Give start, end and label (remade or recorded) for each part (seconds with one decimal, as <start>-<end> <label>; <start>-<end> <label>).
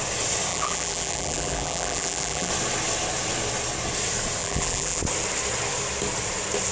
0.0-0.5 recorded; 0.5-2.5 remade; 2.5-4.4 recorded; 4.4-5.0 remade; 5.0-6.7 recorded